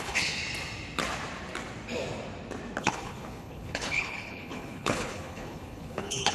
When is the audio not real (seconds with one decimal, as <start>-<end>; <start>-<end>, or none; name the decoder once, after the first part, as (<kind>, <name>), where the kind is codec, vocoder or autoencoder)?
0.0-0.4 (codec, HILCodec); 2.8-6.3